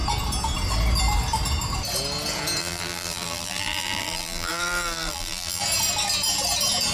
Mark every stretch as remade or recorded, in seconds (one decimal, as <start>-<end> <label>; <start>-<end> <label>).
0.0-2.6 recorded; 2.6-5.6 remade; 5.6-6.9 recorded